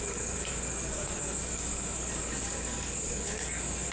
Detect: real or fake fake